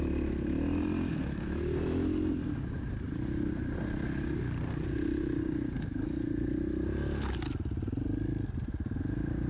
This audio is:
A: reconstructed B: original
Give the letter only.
B